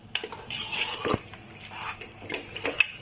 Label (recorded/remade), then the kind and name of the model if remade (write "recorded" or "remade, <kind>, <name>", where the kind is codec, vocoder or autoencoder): recorded